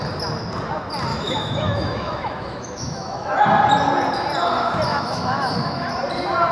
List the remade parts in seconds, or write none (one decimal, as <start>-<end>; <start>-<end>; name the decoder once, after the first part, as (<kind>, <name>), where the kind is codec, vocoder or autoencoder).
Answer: 1.1-3.4 (autoencoder, DAC-VAE); 4.9-5.9